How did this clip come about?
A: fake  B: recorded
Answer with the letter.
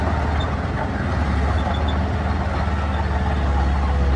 B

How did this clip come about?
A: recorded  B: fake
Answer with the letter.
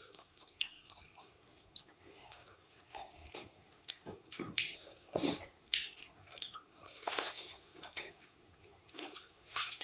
B